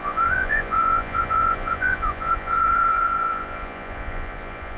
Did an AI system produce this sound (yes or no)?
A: yes